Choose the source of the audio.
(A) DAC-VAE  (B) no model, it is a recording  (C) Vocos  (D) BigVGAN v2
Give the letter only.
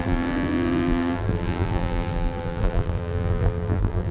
D